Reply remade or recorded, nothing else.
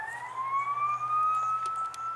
recorded